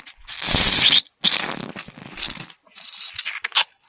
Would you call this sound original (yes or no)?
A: yes